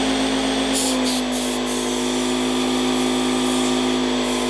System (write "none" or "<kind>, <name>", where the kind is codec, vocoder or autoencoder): none